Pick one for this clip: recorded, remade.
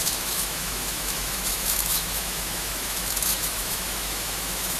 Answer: remade